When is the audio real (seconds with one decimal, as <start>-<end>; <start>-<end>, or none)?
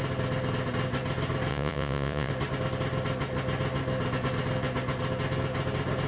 0.0-1.5; 2.3-6.1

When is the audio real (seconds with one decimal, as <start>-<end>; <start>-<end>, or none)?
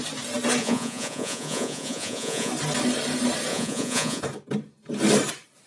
0.0-0.6; 2.5-3.5; 4.2-5.7